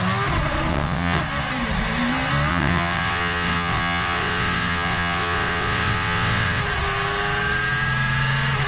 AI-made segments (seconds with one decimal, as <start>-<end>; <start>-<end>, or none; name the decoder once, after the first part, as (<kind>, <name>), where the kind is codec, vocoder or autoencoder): 0.7-1.2 (vocoder, WaveNeXt); 2.5-6.6